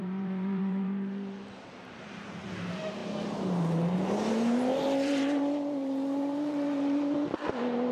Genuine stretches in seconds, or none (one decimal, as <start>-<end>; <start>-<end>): 3.0-4.3